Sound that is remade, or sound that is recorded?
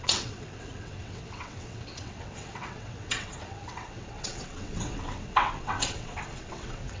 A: remade